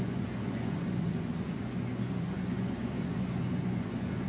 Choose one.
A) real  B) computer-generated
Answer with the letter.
B